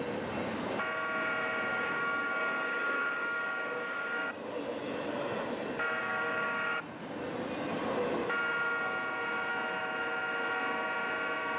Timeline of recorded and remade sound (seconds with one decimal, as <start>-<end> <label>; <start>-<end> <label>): 0.0-1.7 recorded; 1.7-4.4 remade; 4.4-6.0 recorded; 6.0-6.8 remade; 6.8-11.6 recorded